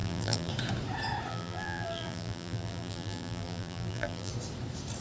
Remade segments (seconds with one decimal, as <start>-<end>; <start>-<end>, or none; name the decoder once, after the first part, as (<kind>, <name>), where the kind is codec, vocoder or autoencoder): 0.0-0.5 (vocoder, BigVGAN v2); 1.3-4.3